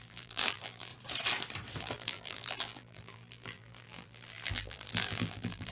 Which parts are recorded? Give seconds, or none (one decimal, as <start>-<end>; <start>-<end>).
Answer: 0.9-1.8